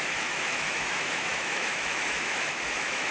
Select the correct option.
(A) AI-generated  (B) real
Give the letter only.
A